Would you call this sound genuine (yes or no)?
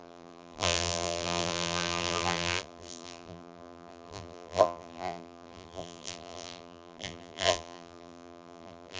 no